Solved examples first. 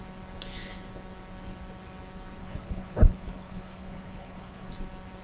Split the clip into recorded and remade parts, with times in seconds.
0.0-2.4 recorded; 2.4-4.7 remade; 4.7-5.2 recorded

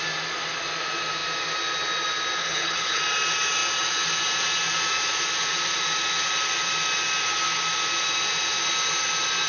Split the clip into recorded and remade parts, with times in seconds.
0.0-2.4 recorded; 2.4-3.0 remade; 3.0-9.5 recorded

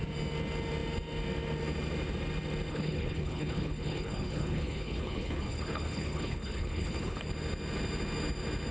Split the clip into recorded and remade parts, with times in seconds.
0.0-2.7 recorded; 2.7-7.3 remade; 7.3-8.7 recorded

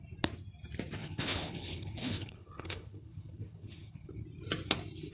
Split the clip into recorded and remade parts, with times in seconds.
0.0-1.0 recorded; 1.0-4.1 remade; 4.1-5.1 recorded

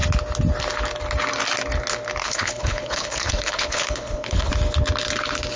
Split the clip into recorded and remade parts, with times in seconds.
0.0-2.2 recorded; 2.2-4.5 remade; 4.5-5.6 recorded

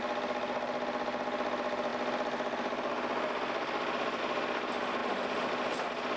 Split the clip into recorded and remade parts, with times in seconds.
0.0-6.2 recorded